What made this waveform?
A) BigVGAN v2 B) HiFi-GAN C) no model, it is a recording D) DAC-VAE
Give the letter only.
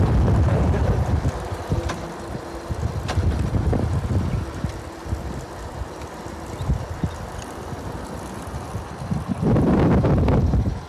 A